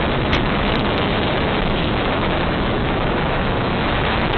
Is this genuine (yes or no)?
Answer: no